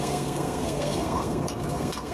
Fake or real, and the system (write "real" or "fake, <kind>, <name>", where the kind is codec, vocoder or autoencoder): fake, codec, SNAC